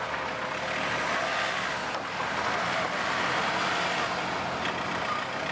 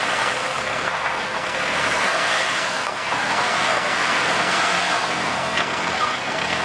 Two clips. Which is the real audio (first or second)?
first